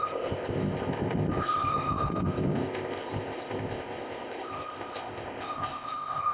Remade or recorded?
remade